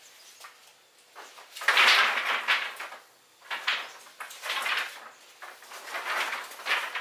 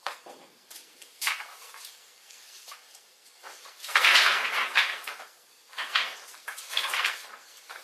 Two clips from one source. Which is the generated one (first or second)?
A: second